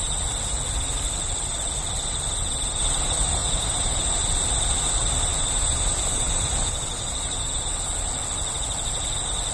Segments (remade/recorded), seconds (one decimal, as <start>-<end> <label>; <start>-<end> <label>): 0.0-3.4 recorded; 3.4-4.1 remade; 4.1-5.3 recorded; 5.3-8.1 remade; 8.1-9.5 recorded

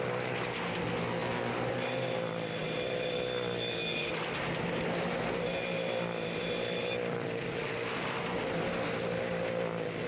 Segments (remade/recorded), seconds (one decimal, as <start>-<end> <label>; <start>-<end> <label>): 0.0-10.1 recorded

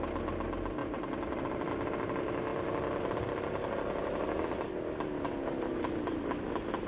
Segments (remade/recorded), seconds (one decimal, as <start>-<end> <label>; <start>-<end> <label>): 0.0-0.8 recorded; 0.8-1.7 remade; 1.7-2.5 recorded; 2.5-4.7 remade; 4.7-6.9 recorded

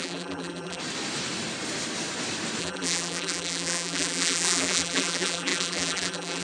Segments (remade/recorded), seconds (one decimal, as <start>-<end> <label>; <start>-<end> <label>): 0.0-0.8 remade; 0.8-2.6 recorded; 2.6-6.4 remade

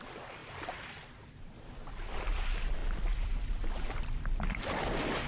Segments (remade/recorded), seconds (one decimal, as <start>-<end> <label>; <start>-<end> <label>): 0.0-5.3 recorded

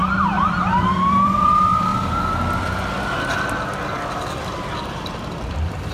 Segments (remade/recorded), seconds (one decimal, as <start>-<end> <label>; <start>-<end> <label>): 0.0-0.7 recorded; 0.7-1.9 remade; 1.9-4.9 recorded; 4.9-5.9 remade